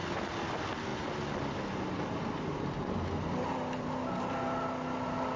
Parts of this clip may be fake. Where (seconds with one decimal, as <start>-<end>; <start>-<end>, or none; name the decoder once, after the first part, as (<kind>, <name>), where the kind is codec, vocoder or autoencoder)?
none